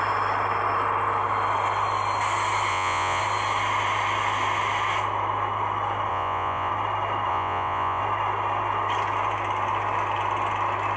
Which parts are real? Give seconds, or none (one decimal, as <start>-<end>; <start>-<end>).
0.0-2.7; 3.2-6.1; 6.7-7.3; 8.0-11.0